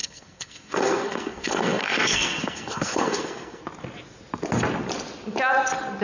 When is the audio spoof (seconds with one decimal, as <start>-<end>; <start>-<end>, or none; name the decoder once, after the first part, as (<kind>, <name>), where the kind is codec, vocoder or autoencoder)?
0.0-3.6 (codec, SNAC)